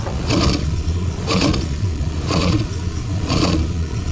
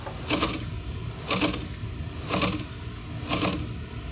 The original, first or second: second